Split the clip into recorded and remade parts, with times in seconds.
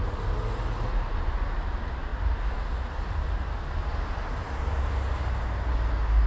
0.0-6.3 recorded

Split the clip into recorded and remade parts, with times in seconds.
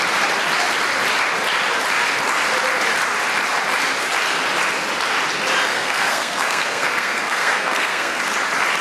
0.0-5.7 recorded; 5.7-8.2 remade; 8.2-8.8 recorded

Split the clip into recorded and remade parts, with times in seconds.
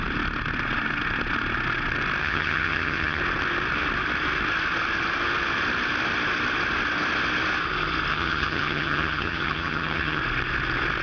0.0-2.2 recorded; 2.2-3.2 remade; 3.2-8.1 recorded; 8.1-10.2 remade; 10.2-11.0 recorded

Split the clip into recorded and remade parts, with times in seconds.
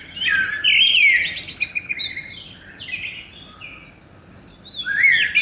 0.0-5.4 recorded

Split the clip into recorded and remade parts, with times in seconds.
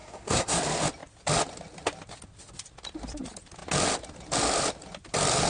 0.0-0.6 remade; 0.6-5.5 recorded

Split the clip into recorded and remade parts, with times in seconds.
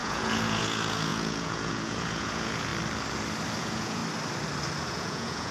0.0-2.7 remade; 2.7-3.6 recorded; 3.6-4.0 remade; 4.0-4.9 recorded; 4.9-5.5 remade